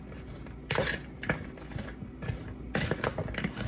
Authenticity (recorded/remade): recorded